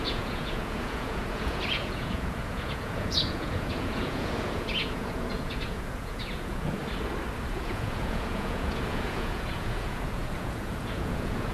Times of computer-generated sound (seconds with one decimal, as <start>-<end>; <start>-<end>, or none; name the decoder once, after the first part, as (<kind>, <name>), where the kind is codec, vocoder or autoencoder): 0.0-6.8 (vocoder, Vocos); 7.5-11.5